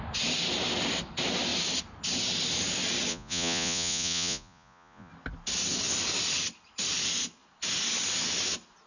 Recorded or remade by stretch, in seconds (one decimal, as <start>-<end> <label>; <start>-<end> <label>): 0.0-3.1 recorded; 3.1-5.1 remade; 5.1-8.9 recorded